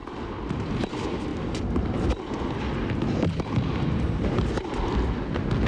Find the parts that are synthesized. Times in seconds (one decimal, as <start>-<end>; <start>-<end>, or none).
none